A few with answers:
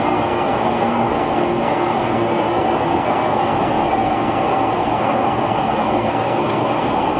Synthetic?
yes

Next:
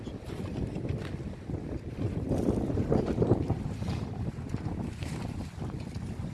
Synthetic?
no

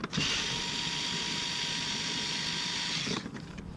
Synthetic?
no